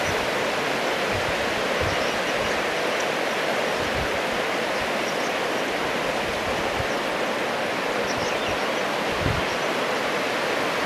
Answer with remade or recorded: recorded